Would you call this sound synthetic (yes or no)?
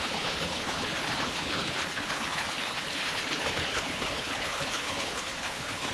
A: yes